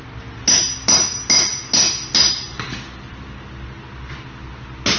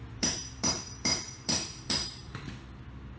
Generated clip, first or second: second